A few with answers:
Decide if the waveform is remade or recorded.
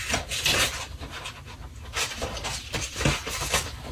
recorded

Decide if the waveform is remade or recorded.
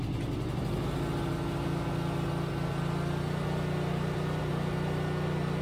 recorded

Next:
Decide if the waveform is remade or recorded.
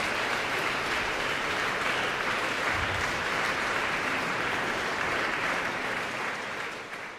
remade